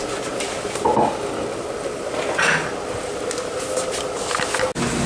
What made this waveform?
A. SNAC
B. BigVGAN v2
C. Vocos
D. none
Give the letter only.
D